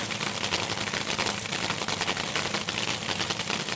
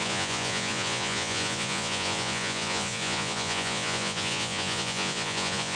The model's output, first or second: second